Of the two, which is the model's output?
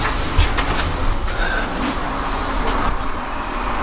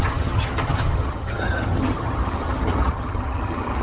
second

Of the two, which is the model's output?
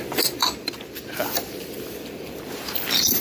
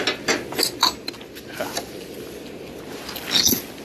first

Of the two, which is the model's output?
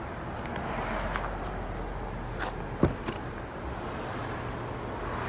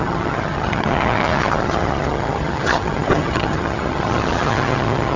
second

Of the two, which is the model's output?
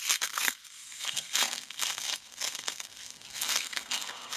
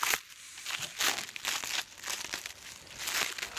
first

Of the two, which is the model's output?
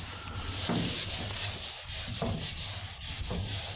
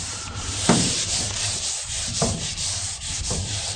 second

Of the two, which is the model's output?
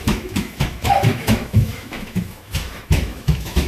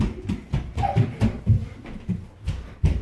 first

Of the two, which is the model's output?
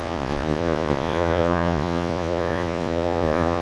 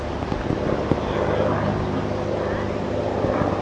first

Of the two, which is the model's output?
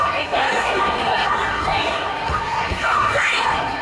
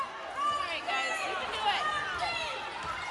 first